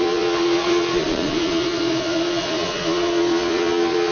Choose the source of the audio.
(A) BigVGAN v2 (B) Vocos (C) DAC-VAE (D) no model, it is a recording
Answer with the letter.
B